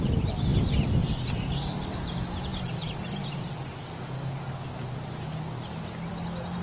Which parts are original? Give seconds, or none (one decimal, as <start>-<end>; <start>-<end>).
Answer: 0.0-6.6